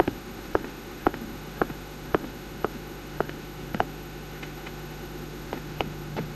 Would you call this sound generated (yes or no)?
yes